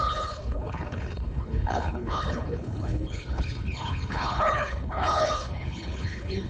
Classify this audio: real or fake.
fake